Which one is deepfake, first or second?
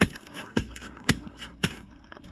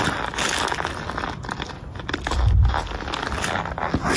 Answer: first